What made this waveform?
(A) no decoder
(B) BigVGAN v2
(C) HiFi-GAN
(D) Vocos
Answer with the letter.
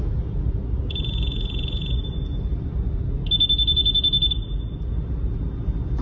A